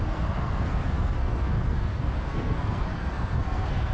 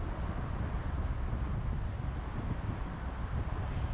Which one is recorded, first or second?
second